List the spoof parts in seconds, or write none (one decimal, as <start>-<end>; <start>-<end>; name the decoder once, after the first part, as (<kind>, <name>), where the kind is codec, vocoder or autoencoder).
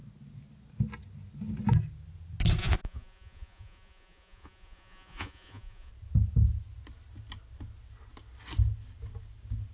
2.6-5.9 (vocoder, Vocos)